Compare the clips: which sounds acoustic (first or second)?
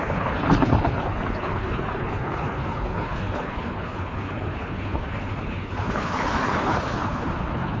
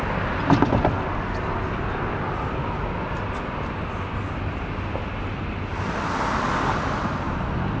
second